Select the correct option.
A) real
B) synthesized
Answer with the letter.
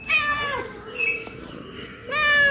A